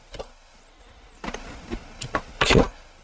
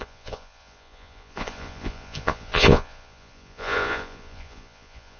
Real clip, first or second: first